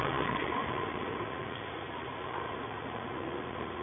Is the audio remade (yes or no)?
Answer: yes